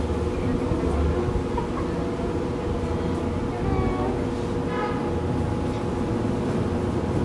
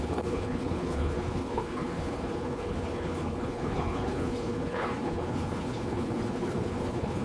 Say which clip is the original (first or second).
first